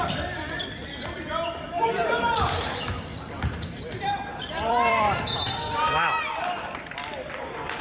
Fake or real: fake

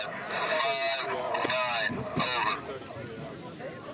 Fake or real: real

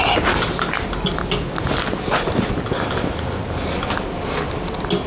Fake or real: real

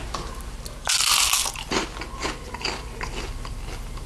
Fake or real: real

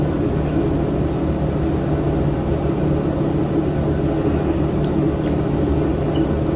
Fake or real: real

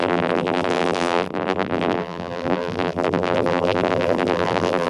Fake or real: fake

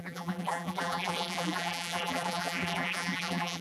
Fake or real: fake